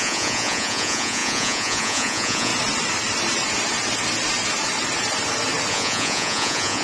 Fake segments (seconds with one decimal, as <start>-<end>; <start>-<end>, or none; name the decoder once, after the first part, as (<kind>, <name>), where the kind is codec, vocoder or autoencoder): 0.0-2.5 (vocoder, Vocos); 5.7-6.8